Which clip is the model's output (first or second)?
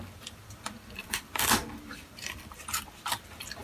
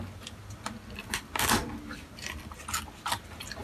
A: first